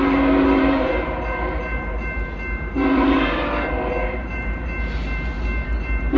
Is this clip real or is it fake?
fake